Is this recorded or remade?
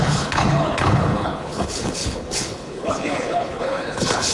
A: remade